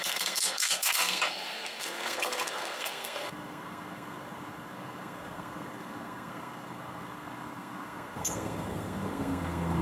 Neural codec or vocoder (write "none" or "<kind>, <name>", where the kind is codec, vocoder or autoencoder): codec, SNAC